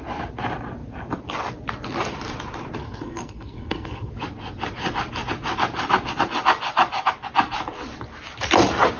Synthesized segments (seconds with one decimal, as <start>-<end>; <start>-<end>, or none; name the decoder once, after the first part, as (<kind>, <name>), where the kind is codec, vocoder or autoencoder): 2.8-4.1 (codec, SNAC)